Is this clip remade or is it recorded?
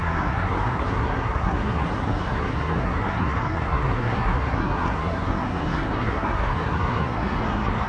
remade